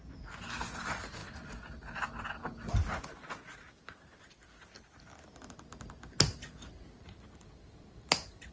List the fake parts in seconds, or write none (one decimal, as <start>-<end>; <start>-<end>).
none